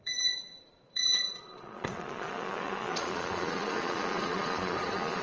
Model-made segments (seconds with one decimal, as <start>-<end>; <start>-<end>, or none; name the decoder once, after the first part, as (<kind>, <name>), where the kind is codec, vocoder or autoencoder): 0.0-5.2 (vocoder, Vocos)